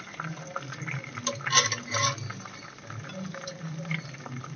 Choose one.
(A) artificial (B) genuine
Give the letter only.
B